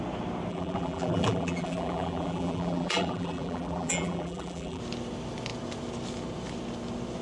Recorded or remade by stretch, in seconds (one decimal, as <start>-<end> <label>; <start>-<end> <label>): 0.0-0.5 recorded; 0.5-4.8 remade; 4.8-7.2 recorded